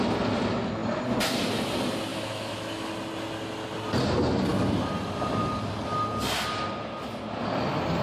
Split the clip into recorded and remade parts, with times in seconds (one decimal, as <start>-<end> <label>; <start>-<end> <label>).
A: 0.0-2.1 recorded; 2.1-2.9 remade; 2.9-8.0 recorded